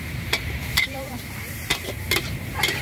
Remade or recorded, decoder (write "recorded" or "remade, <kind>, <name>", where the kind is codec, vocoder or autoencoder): remade, vocoder, BigVGAN v2